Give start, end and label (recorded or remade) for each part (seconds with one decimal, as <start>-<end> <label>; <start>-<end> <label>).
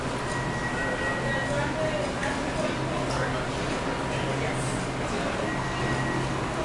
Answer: 0.0-6.6 recorded